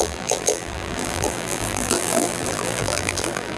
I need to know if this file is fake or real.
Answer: fake